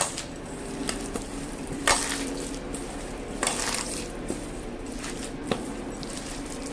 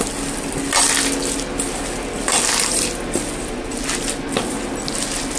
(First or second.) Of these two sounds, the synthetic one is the first